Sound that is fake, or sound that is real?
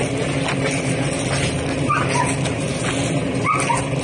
real